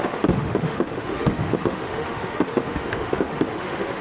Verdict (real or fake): fake